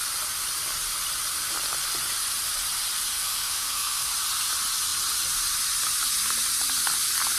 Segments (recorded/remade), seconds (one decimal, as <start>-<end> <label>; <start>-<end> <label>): 0.0-3.1 recorded; 3.1-4.1 remade; 4.1-7.4 recorded